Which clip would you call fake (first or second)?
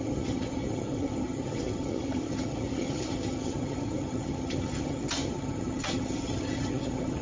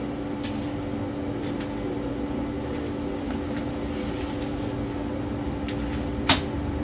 first